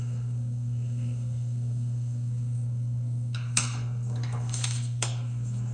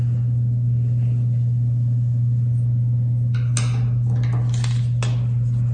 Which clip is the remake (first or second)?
first